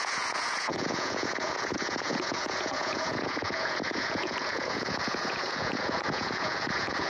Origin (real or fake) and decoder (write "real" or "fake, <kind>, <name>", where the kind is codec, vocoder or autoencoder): fake, vocoder, Vocos